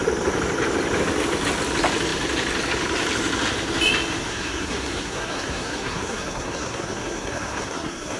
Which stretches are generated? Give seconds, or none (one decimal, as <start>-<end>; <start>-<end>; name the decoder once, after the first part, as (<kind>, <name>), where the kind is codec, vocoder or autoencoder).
4.3-8.2 (codec, SNAC)